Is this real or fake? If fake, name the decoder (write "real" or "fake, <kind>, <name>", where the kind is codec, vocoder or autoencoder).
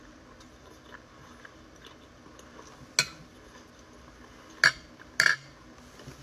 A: real